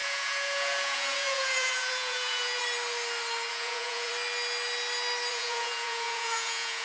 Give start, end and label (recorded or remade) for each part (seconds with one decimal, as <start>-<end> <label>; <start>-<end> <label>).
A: 0.0-2.6 remade; 2.6-3.5 recorded; 3.5-4.1 remade; 4.1-5.3 recorded; 5.3-6.8 remade